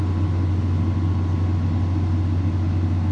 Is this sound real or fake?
real